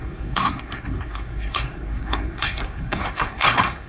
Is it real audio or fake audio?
fake